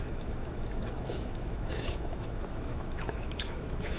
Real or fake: fake